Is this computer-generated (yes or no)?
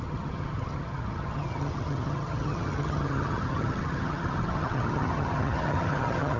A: yes